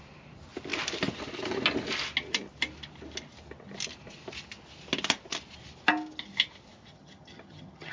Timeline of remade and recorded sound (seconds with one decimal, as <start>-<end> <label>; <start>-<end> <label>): 0.0-6.9 recorded; 6.9-7.9 remade